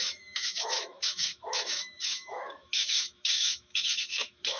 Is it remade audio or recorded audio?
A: remade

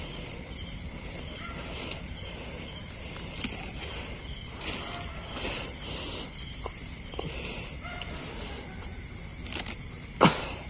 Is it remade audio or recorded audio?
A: recorded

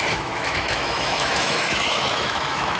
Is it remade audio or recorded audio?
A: remade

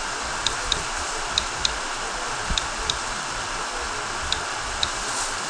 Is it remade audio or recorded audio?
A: recorded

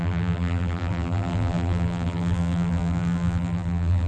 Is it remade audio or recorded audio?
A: remade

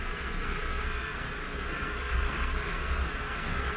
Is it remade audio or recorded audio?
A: remade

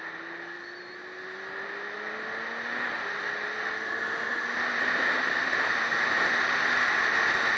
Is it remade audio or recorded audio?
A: recorded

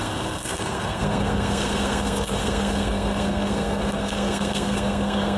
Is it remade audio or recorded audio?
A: remade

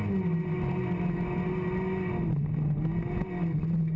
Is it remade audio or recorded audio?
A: recorded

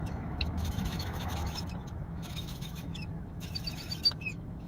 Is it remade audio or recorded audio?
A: remade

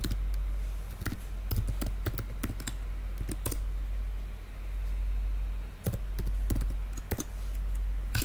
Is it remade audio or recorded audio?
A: recorded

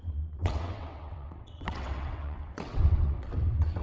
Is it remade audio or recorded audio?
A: remade